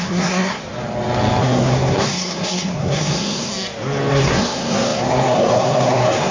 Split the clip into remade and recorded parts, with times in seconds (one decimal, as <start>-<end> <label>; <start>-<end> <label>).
0.0-0.6 remade; 0.6-1.4 recorded; 1.4-3.5 remade; 3.5-4.1 recorded; 4.1-6.3 remade